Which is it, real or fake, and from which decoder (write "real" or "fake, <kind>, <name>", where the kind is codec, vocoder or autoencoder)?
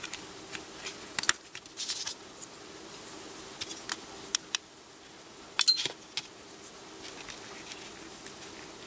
real